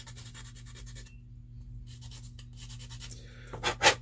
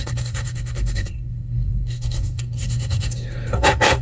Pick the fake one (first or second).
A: second